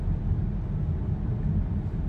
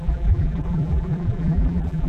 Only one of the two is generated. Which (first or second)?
second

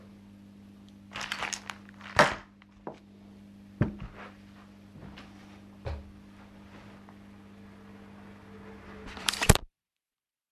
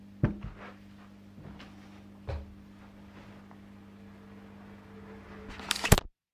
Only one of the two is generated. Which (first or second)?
first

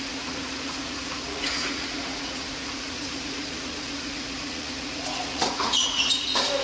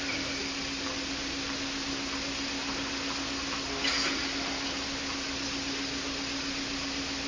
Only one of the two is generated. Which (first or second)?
first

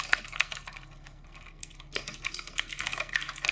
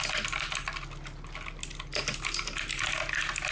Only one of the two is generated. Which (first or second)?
first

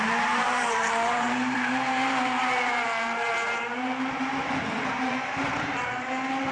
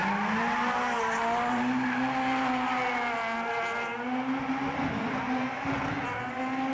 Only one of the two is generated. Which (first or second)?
first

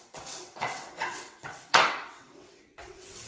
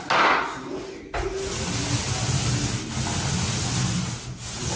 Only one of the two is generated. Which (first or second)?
first